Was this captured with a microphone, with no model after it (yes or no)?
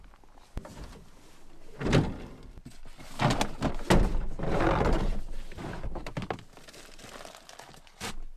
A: yes